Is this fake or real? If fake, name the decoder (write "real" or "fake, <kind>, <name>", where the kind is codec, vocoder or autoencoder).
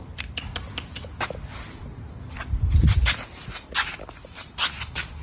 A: real